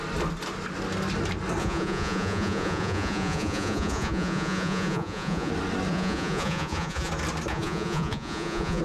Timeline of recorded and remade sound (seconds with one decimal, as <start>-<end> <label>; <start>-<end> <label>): 0.0-1.6 recorded; 1.6-5.5 remade; 5.5-5.9 recorded; 5.9-7.1 remade; 7.1-7.5 recorded; 7.5-8.8 remade